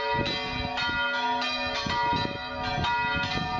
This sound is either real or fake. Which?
real